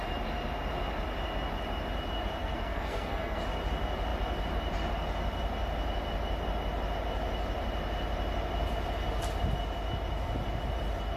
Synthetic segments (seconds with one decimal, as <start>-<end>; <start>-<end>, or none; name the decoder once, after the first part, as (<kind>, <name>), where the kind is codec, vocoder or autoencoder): 2.4-3.4 (codec, SNAC)